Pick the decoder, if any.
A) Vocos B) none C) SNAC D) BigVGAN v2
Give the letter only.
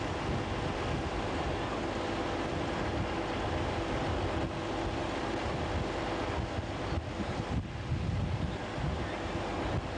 B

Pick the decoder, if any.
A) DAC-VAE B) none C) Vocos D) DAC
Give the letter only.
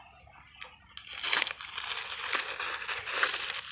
B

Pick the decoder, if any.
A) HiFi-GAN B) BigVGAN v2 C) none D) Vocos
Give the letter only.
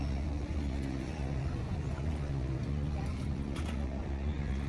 D